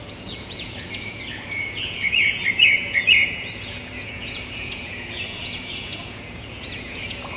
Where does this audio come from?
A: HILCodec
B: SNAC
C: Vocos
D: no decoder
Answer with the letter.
C